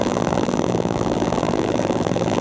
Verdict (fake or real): fake